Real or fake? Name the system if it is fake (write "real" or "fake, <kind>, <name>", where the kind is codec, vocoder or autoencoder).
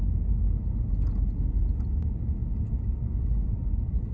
real